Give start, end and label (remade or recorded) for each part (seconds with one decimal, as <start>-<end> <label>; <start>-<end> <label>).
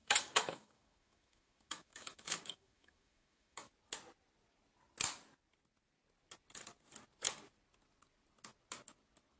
0.0-3.7 remade; 3.7-9.4 recorded